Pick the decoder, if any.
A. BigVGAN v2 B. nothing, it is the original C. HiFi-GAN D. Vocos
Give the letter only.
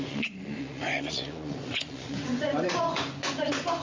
D